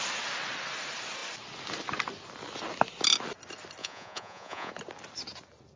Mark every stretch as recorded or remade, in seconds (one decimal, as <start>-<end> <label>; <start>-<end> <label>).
0.0-3.8 recorded; 3.8-4.7 remade; 4.7-5.8 recorded